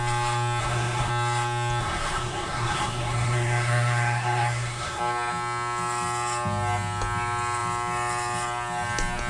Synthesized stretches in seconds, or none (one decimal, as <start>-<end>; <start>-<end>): 0.6-1.1; 1.8-5.0